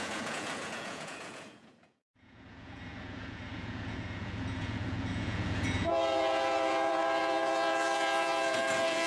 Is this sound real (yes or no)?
no